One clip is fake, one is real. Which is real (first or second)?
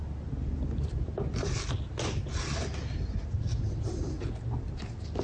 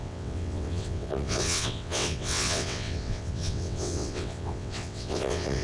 first